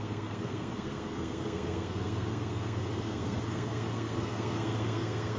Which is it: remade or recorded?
remade